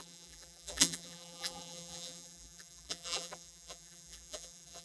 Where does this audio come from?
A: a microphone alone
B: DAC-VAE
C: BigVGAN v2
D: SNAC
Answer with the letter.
C